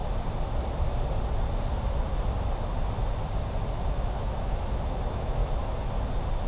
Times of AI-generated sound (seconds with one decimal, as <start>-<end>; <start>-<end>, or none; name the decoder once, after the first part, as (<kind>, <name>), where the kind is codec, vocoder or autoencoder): 3.9-5.4 (autoencoder, DAC-VAE)